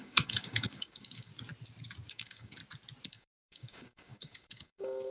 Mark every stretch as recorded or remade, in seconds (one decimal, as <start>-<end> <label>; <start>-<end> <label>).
0.0-1.3 remade; 1.3-2.1 recorded; 2.1-2.6 remade; 2.6-3.1 recorded; 3.1-5.1 remade